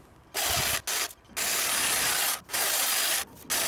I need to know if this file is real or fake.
real